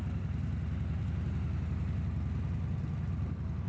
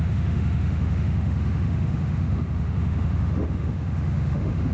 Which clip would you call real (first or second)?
first